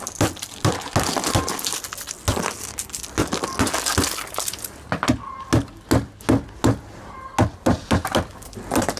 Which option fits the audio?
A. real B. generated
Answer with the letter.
A